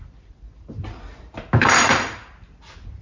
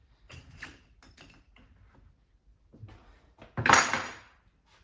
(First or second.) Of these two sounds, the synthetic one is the first